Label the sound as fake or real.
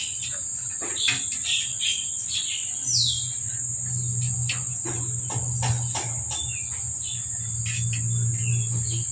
real